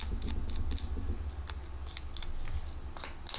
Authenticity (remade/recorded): recorded